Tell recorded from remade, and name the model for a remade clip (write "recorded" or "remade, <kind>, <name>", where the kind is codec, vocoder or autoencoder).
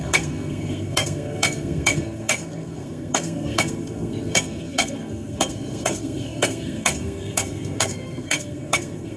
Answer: remade, codec, SNAC